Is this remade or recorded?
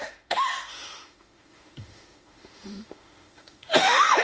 remade